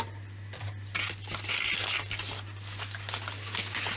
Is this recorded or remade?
recorded